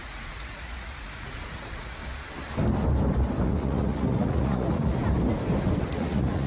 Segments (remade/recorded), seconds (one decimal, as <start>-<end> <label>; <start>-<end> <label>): 0.0-2.0 remade; 2.0-3.4 recorded; 3.4-5.0 remade; 5.0-5.8 recorded; 5.8-6.5 remade

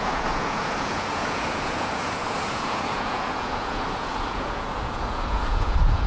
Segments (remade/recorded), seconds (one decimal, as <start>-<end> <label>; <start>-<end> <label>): 0.0-6.1 remade

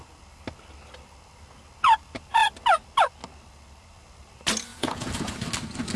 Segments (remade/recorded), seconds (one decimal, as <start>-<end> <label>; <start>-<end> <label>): 0.0-4.7 recorded; 4.7-5.3 remade; 5.3-6.0 recorded

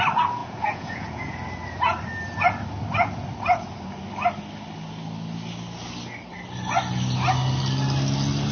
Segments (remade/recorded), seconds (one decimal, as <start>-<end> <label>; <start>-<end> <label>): 0.0-0.4 recorded; 0.4-1.3 remade; 1.3-8.5 recorded

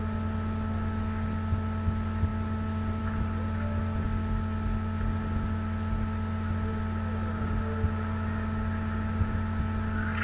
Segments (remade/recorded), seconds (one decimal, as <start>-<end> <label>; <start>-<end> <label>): 0.0-10.2 recorded

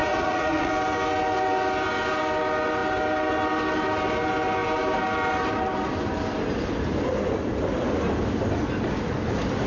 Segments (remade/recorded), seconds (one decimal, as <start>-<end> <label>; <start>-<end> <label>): 0.0-0.7 remade; 0.7-9.7 recorded